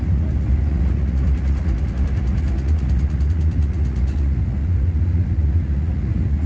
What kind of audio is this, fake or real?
fake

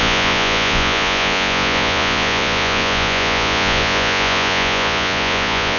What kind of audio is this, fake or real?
fake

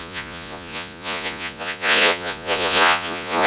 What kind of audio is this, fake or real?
fake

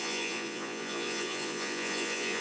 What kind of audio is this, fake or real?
fake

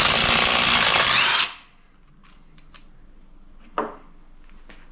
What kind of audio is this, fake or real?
real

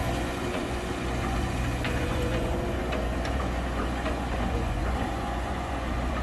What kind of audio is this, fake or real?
fake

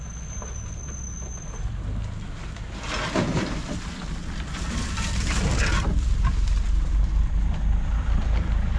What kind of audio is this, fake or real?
real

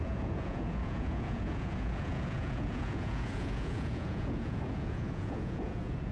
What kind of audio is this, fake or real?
fake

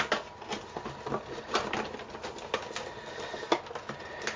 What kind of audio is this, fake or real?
real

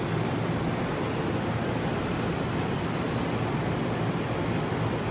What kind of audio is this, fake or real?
real